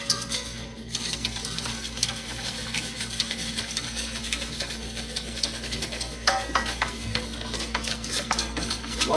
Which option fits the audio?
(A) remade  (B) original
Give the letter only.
A